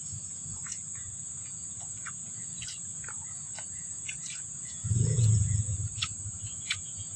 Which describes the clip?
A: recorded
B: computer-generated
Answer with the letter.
B